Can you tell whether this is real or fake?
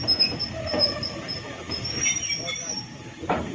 fake